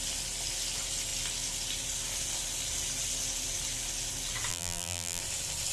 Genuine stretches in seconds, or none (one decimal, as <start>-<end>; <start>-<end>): 0.0-4.5; 5.2-5.7